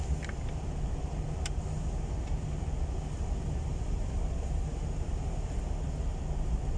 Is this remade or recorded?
recorded